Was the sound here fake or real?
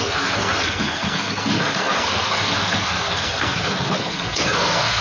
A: fake